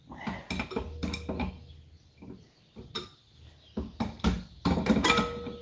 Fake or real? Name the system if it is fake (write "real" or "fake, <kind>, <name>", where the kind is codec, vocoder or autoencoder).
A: real